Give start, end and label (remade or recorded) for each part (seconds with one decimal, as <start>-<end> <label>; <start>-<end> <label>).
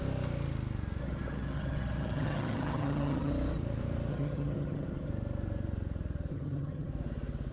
0.0-1.0 recorded; 1.0-3.3 remade; 3.3-4.1 recorded; 4.1-5.1 remade; 5.1-6.3 recorded; 6.3-6.9 remade; 6.9-7.5 recorded